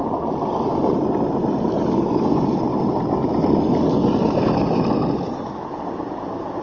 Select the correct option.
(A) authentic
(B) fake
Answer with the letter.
A